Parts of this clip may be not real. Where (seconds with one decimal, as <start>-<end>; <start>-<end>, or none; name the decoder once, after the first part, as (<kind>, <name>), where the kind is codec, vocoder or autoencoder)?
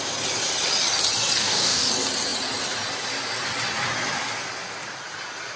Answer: 1.4-1.9 (codec, DAC)